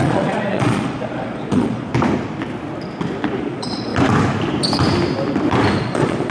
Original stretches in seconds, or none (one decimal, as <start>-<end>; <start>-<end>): 1.9-3.4; 3.9-5.8